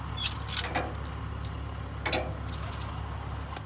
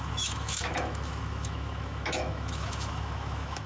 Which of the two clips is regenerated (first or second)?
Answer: second